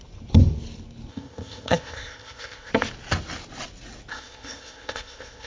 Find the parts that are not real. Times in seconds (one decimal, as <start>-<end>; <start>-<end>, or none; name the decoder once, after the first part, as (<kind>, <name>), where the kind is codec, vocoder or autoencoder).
1.1-2.7 (codec, ZipCodec); 4.1-5.5

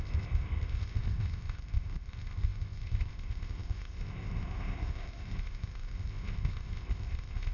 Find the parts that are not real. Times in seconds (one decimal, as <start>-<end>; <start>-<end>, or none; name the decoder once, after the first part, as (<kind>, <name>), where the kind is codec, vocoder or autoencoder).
0.0-7.5 (codec, ZipCodec)